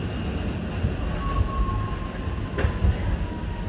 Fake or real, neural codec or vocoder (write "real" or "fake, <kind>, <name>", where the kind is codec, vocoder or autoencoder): real